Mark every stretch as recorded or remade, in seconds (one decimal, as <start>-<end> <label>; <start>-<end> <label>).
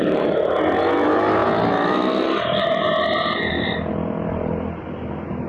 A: 0.0-5.5 recorded